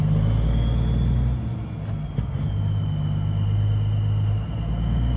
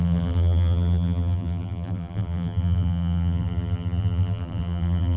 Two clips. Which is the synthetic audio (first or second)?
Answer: second